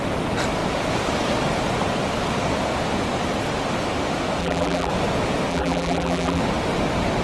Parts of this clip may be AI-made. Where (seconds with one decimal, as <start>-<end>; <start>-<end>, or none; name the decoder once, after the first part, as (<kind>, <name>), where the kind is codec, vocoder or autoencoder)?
4.4-4.9 (vocoder, BigVGAN v2); 5.5-6.4